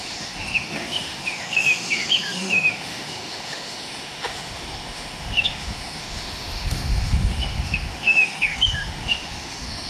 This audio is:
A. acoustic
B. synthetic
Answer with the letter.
B